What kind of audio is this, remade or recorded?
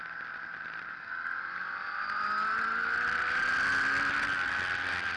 recorded